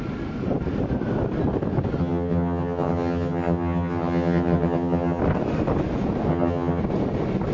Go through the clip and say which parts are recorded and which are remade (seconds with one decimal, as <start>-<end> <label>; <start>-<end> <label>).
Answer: 0.0-2.0 recorded; 2.0-5.2 remade; 5.2-6.3 recorded; 6.3-6.8 remade; 6.8-7.5 recorded